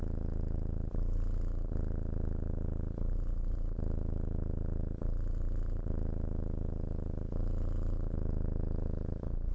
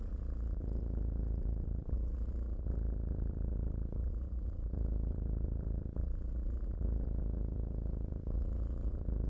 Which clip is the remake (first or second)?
second